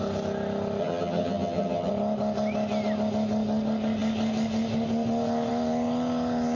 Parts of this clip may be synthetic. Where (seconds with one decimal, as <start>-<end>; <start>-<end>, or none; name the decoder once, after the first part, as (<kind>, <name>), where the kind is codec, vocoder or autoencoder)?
0.8-1.9 (vocoder, HiFi-GAN)